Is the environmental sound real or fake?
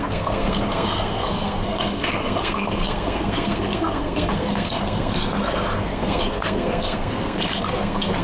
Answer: fake